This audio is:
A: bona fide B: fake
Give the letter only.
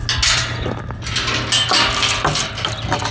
A